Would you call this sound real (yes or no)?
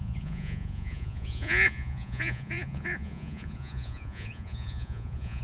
no